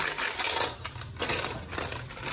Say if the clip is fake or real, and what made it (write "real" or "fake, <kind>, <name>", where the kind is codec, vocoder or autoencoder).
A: real